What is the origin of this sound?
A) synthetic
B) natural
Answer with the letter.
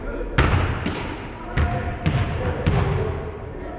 B